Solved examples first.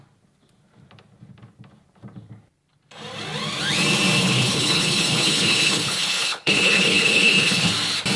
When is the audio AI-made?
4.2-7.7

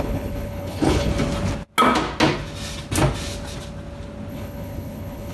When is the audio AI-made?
0.0-1.1; 4.3-5.3

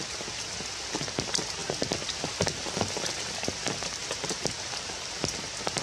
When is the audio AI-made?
none

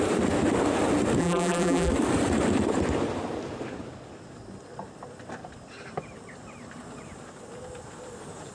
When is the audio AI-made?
1.2-1.9

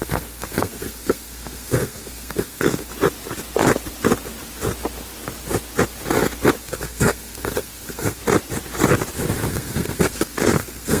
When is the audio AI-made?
0.0-2.9; 6.6-8.2; 9.5-11.0

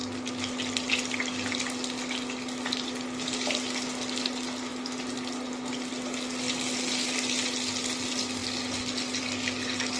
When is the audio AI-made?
none

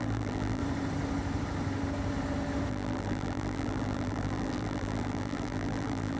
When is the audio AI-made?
0.0-0.6; 2.7-6.2

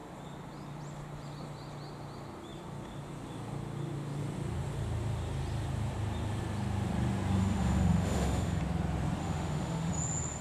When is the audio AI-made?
7.4-8.6; 9.2-9.9